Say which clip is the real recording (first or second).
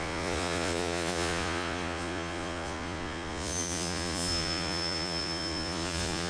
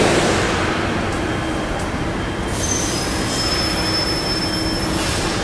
second